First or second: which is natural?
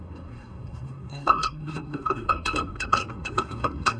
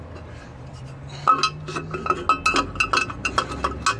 second